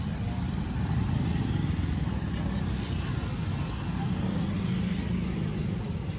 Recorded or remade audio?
recorded